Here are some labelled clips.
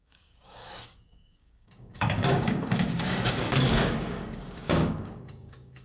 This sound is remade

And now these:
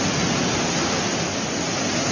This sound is recorded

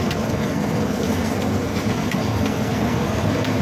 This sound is remade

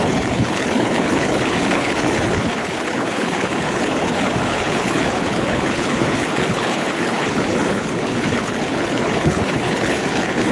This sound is remade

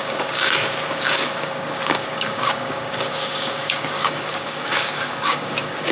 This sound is remade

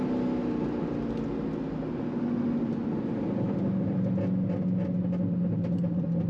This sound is recorded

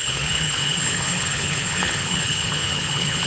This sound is remade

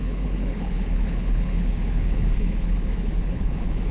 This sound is remade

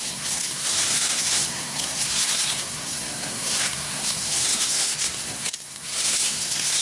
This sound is remade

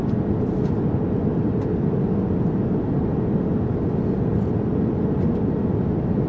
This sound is recorded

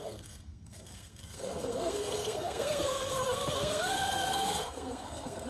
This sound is remade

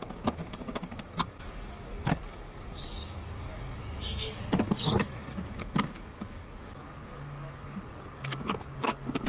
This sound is remade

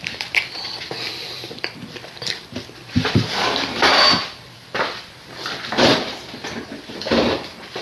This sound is remade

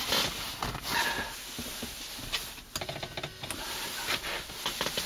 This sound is recorded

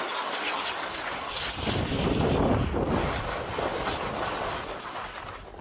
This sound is recorded